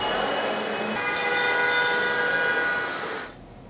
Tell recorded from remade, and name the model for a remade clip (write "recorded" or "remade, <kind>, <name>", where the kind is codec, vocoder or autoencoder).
recorded